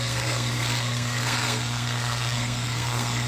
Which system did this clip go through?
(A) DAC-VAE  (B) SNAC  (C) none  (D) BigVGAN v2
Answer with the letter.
B